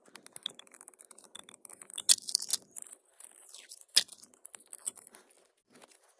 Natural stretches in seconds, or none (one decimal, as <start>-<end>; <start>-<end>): 0.0-6.2